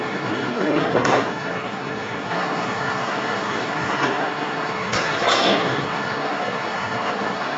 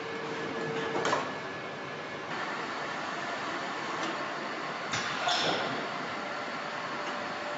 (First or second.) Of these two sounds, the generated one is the first